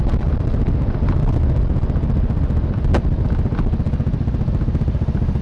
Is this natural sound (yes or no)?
yes